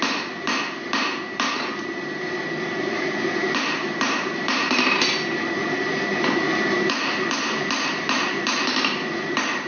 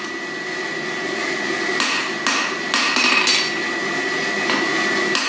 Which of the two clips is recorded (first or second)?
second